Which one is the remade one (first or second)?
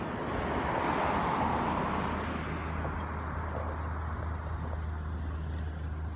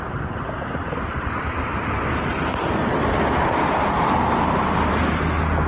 second